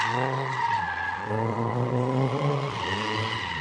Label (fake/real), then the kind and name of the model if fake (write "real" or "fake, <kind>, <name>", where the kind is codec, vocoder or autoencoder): fake, vocoder, Vocos